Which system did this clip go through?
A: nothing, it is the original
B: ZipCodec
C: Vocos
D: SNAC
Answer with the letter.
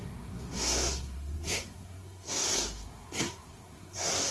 D